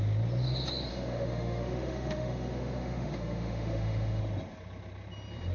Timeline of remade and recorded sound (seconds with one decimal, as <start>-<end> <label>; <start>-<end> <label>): 0.0-0.9 recorded; 0.9-4.2 remade; 4.2-5.5 recorded